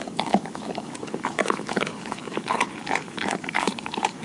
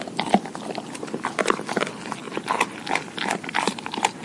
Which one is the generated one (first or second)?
first